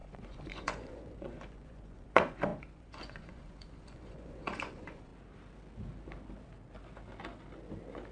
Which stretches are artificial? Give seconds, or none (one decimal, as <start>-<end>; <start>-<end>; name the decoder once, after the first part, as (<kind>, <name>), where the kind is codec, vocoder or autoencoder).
0.0-5.1 (vocoder, Vocos)